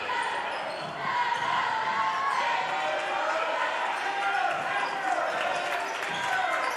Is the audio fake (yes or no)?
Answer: no